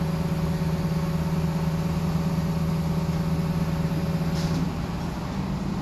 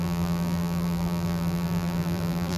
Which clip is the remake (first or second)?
second